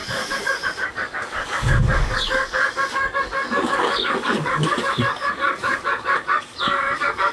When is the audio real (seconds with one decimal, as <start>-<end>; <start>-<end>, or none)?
none